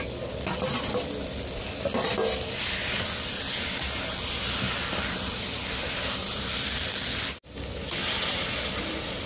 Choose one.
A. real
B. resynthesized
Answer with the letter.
A